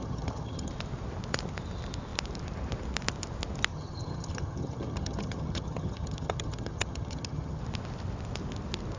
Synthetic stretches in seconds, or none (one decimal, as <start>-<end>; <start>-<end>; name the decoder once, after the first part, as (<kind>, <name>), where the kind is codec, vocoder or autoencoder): 0.0-0.7 (vocoder, HiFi-GAN); 3.7-7.6